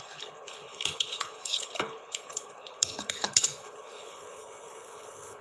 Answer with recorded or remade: remade